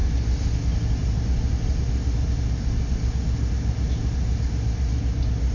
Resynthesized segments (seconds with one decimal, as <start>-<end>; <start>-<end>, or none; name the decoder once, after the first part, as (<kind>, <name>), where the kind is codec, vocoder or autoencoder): none